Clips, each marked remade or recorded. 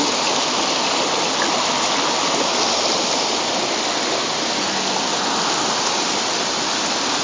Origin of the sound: recorded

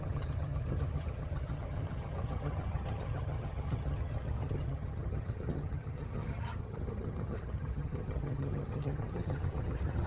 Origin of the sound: remade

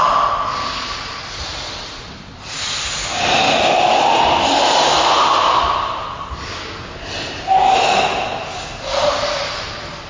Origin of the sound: recorded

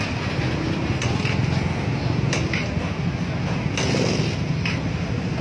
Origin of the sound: recorded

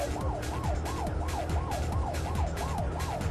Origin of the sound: recorded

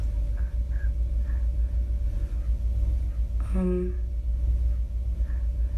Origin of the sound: recorded